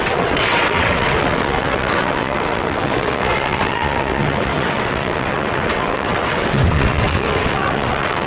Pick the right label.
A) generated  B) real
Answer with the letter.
A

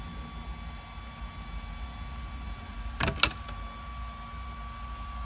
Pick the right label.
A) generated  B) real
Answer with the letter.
B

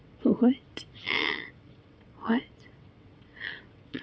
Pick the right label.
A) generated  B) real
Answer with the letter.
A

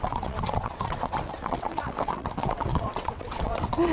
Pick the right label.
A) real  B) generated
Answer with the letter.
B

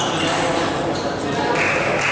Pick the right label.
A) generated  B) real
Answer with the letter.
B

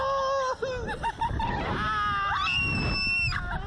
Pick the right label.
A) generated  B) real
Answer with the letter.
B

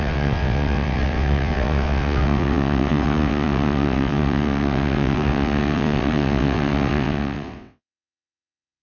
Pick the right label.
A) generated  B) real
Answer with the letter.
A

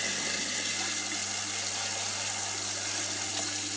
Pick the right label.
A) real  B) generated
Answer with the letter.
A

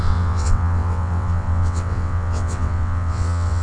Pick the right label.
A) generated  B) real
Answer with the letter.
A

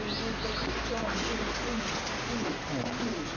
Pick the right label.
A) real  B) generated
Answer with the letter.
A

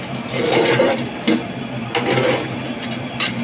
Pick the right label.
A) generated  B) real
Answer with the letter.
B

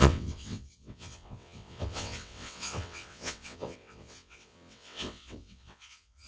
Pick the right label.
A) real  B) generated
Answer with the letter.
B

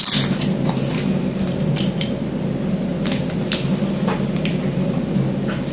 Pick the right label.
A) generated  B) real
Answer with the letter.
B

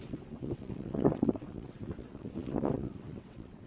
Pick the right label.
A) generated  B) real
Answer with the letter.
A